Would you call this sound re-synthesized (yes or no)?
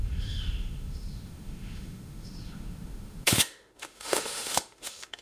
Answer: yes